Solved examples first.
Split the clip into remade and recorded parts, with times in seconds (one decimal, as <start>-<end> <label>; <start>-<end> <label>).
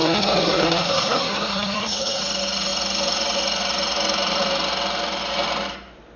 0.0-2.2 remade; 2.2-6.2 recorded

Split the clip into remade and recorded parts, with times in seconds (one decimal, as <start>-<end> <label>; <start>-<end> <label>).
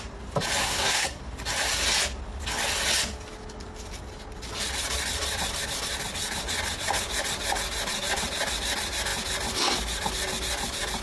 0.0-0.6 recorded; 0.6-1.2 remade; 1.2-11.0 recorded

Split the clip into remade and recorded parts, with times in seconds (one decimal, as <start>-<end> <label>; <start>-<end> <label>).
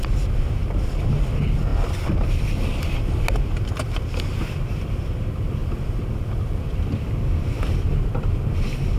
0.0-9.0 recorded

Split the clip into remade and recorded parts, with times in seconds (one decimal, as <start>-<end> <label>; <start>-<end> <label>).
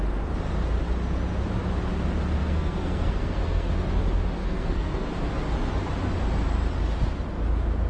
0.0-2.4 recorded; 2.4-3.7 remade; 3.7-4.4 recorded; 4.4-5.1 remade; 5.1-7.9 recorded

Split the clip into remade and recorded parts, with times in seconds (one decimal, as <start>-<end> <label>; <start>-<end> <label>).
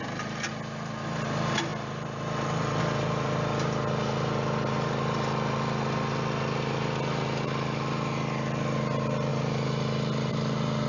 0.0-10.9 recorded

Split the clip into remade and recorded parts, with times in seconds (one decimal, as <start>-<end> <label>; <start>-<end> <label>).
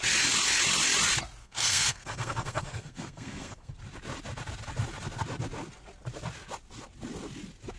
0.0-1.4 recorded; 1.4-3.7 remade; 3.7-7.8 recorded